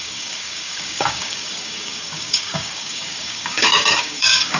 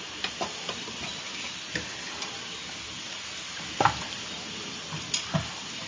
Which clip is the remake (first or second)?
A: first